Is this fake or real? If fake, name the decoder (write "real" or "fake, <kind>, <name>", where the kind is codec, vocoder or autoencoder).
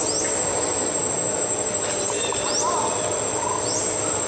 real